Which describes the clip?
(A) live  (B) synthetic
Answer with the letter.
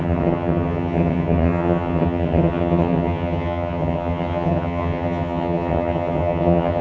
B